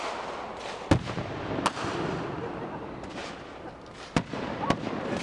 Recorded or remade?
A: recorded